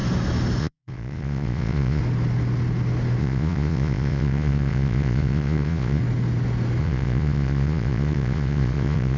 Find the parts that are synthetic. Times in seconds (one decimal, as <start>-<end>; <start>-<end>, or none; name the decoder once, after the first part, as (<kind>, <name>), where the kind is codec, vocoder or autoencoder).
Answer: 0.6-2.0 (vocoder, Vocos); 3.2-6.0; 6.8-9.2

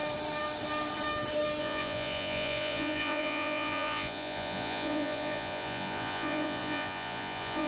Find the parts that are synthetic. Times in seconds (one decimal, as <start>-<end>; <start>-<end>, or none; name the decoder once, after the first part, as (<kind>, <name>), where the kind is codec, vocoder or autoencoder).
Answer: 1.6-7.7 (vocoder, Vocos)

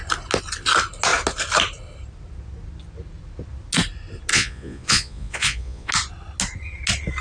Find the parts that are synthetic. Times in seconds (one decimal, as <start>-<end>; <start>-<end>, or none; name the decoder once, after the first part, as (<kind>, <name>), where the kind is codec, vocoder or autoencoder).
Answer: 4.3-5.9 (vocoder, Vocos)